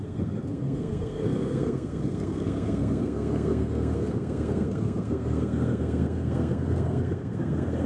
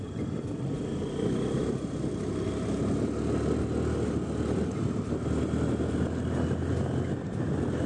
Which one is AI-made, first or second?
first